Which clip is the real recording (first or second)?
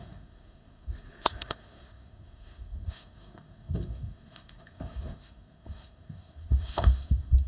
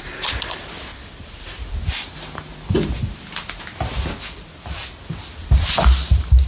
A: second